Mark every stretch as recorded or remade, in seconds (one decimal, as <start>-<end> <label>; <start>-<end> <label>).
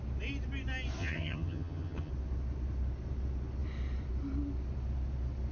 0.0-1.0 recorded; 1.0-2.1 remade; 2.1-5.5 recorded